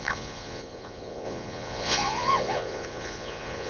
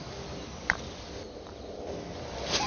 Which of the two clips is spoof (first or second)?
first